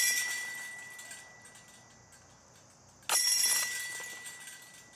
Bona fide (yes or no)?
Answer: yes